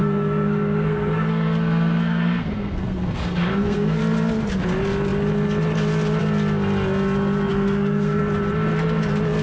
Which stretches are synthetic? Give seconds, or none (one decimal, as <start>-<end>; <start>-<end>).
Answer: 0.0-4.0; 7.5-8.2